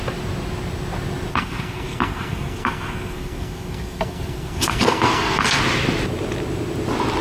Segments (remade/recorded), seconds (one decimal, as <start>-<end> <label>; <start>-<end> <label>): 0.0-1.3 recorded; 1.3-5.6 remade; 5.6-7.2 recorded